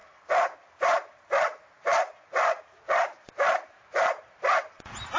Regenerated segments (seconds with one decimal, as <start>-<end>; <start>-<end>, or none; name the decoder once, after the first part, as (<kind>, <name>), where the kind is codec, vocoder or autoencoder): none